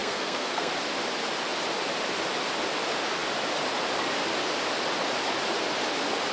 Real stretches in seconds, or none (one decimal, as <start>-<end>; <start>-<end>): 0.7-6.3